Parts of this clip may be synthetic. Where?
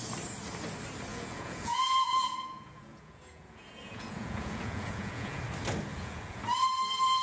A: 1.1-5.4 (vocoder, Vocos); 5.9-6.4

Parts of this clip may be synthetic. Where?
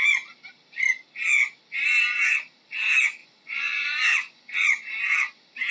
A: 3.2-5.0 (vocoder, Vocos)